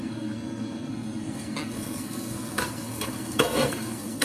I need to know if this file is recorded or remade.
remade